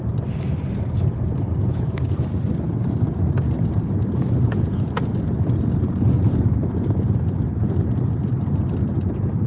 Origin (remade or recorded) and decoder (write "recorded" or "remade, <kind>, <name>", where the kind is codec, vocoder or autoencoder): remade, vocoder, BigVGAN v2